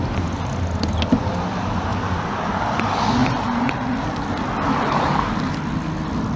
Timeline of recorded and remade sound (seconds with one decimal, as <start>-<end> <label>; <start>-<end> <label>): 0.0-6.4 recorded